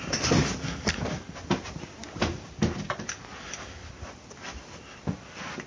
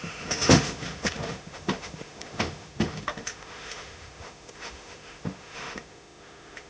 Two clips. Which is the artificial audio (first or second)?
second